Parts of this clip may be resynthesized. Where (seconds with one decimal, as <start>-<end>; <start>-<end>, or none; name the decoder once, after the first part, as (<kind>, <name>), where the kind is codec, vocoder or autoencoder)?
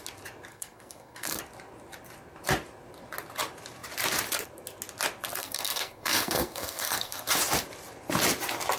0.5-1.4 (codec, SNAC); 5.4-7.3